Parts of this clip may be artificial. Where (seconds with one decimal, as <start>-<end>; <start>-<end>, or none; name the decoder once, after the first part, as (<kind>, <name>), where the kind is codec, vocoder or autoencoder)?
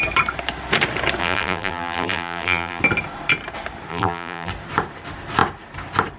1.2-2.8 (vocoder, BigVGAN v2); 3.9-4.5